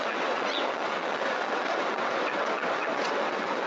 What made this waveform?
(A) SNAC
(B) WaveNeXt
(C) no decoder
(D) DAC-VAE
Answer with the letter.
B